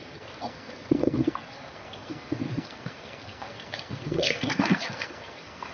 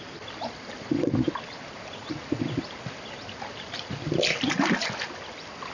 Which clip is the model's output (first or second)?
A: first